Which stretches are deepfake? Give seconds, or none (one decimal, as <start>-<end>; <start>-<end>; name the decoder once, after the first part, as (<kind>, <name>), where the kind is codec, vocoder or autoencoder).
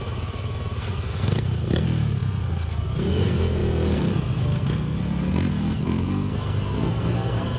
0.0-7.6 (codec, SNAC)